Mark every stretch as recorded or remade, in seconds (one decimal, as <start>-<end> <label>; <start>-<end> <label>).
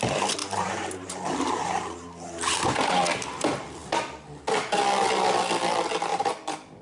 0.0-0.4 recorded; 0.4-3.0 remade; 3.0-6.1 recorded; 6.1-6.8 remade